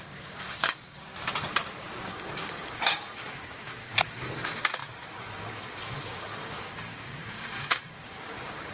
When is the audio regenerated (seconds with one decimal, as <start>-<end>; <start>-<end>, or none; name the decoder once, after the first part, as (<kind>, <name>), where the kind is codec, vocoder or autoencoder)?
0.0-1.1 (codec, DAC); 2.1-8.7